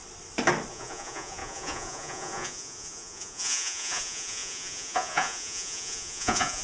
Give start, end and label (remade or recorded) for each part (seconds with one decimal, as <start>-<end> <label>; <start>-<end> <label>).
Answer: 0.0-0.7 recorded; 0.7-6.6 remade